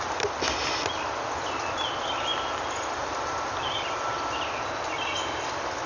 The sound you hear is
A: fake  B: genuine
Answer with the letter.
B